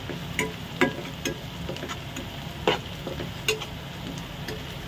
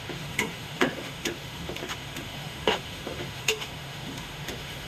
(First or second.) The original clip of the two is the first